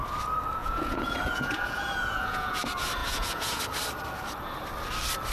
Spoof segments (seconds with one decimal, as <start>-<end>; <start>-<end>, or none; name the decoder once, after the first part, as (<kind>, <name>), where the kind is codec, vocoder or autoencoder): 0.6-2.6 (vocoder, Vocos); 3.0-3.6